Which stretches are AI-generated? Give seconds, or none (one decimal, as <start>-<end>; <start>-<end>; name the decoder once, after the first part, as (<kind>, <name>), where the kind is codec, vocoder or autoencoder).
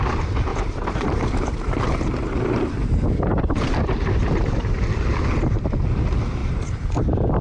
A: 0.5-4.9 (vocoder, BigVGAN v2); 6.4-6.9